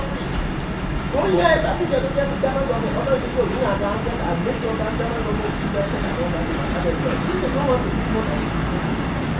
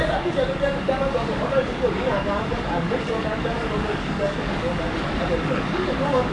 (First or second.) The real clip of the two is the first